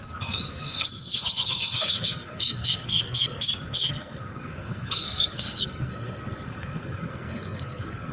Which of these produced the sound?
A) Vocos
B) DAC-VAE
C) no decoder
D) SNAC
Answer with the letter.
D